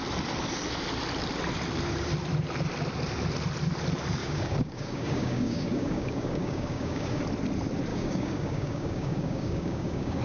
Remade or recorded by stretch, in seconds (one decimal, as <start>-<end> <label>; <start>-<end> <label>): 0.0-4.2 recorded; 4.2-7.2 remade; 7.2-7.9 recorded; 7.9-10.2 remade